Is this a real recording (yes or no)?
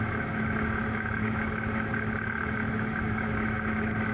no